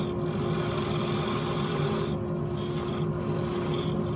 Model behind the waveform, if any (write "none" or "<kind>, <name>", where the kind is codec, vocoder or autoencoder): none